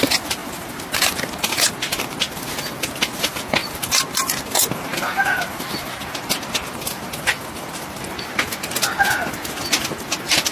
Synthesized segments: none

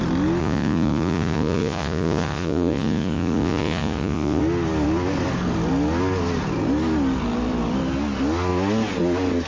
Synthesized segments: 0.4-4.4 (vocoder, Vocos)

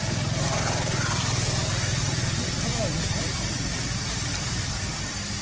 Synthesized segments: none